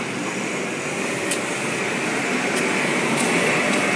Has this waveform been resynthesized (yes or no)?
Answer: no